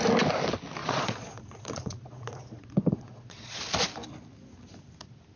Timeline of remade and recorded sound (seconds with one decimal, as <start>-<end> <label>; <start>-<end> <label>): 0.0-0.8 recorded; 0.8-3.6 remade; 3.6-5.4 recorded